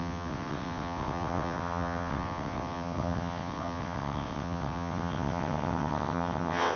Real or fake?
fake